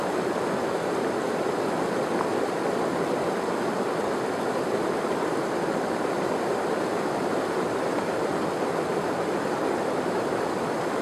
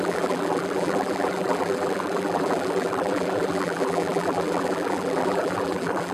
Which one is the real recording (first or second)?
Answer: first